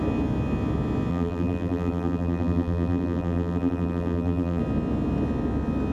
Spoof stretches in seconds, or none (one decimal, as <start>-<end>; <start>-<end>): 1.1-4.6